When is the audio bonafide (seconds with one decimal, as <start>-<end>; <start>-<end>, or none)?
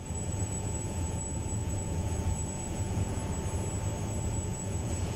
3.2-4.3